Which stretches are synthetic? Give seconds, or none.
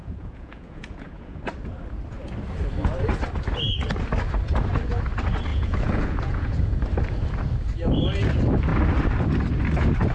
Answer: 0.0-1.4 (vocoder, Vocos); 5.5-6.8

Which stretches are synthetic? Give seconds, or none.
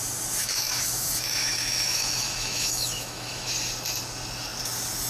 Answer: 0.4-3.5 (autoencoder, DAC-VAE)